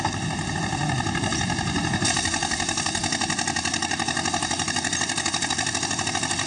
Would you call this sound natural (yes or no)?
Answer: yes